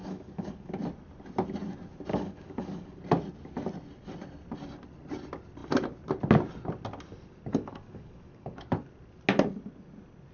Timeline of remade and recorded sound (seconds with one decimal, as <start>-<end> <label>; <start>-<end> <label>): 0.0-0.7 remade; 0.7-2.1 recorded; 2.1-3.0 remade; 3.0-7.5 recorded; 7.5-8.7 remade; 8.7-10.3 recorded

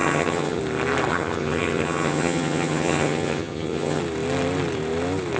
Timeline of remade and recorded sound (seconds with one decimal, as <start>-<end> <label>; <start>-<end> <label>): 0.0-0.6 remade; 0.6-1.1 recorded; 1.1-4.0 remade; 4.0-5.4 recorded

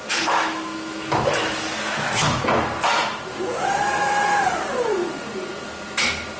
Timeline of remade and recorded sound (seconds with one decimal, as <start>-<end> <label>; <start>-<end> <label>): 0.0-2.4 remade; 2.4-6.4 recorded

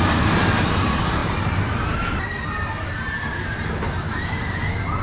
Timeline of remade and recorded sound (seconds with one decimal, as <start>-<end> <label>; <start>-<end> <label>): 0.0-5.0 recorded